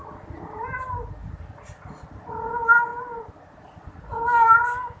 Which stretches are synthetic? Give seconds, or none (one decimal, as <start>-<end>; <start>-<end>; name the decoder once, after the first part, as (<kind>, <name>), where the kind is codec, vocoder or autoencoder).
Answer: none